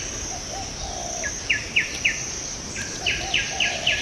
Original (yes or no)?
yes